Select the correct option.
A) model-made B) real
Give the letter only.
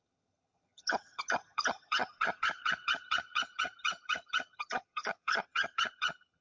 A